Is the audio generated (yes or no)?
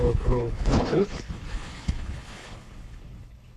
yes